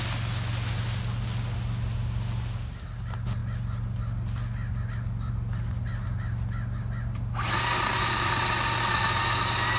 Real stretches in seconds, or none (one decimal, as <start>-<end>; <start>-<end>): 0.0-9.8